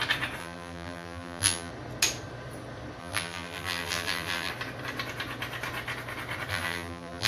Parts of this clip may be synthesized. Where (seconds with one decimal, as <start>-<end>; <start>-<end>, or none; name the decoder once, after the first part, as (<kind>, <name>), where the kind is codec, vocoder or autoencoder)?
0.4-1.7 (vocoder, BigVGAN v2); 3.0-4.5; 6.5-7.3